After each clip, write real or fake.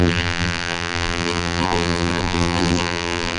fake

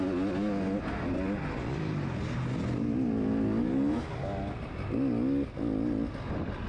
real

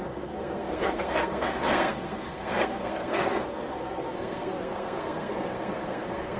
fake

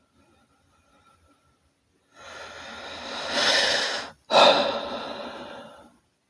real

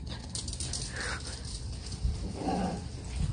real